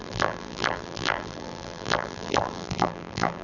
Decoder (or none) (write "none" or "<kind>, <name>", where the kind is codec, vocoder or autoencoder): vocoder, BigVGAN v2